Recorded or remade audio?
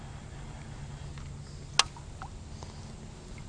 recorded